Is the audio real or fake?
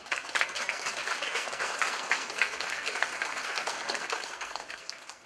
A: fake